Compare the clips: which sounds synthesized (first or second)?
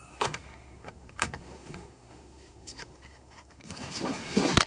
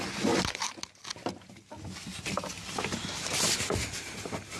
first